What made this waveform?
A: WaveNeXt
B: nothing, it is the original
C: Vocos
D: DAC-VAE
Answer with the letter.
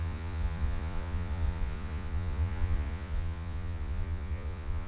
C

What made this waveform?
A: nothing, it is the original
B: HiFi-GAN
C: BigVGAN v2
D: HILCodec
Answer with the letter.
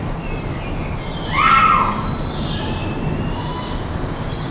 A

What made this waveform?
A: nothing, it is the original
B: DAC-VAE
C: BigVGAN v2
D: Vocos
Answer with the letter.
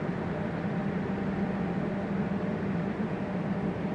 A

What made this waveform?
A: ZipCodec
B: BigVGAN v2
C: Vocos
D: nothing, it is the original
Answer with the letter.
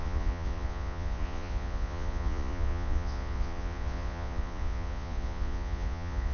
C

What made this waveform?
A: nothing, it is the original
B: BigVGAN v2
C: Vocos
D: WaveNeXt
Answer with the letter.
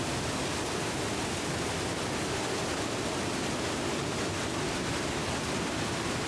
A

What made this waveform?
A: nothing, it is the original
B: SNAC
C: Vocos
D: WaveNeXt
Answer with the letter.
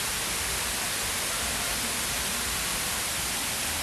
A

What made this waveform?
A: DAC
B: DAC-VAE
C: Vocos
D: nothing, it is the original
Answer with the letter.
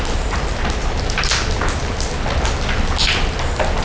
D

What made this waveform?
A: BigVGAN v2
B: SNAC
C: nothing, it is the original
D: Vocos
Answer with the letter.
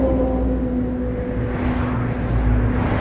C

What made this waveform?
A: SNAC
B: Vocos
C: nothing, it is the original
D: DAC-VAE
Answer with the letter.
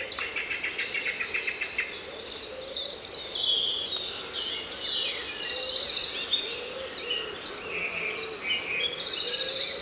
C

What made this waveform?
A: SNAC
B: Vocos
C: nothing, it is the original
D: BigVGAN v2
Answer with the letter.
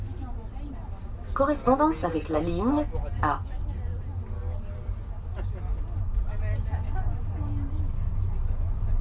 C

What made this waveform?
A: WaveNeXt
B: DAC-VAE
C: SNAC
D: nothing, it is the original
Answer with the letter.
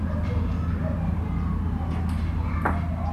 D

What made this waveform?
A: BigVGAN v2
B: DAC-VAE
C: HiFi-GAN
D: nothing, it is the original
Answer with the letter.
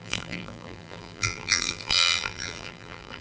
A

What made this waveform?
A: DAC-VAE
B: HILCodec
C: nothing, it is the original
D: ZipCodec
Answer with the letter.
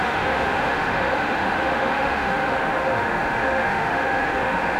A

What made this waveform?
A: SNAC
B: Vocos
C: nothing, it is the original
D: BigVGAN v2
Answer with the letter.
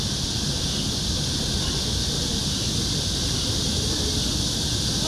C